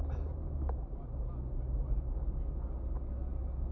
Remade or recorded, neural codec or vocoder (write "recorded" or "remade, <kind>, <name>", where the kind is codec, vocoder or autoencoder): recorded